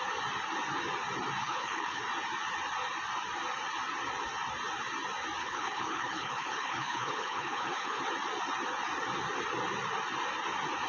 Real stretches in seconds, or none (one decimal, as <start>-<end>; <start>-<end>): 0.0-1.4; 2.0-5.4; 8.0-10.9